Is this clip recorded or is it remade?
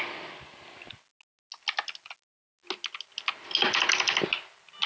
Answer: recorded